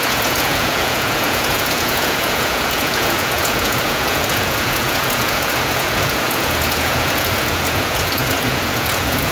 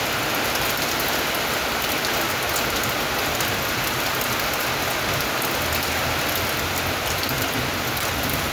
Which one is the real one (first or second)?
second